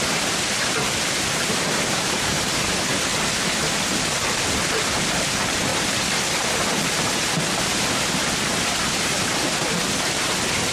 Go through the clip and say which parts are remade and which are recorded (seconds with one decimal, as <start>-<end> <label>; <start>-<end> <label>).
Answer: 0.0-3.1 remade; 3.1-5.2 recorded; 5.2-5.7 remade; 5.7-8.1 recorded; 8.1-10.7 remade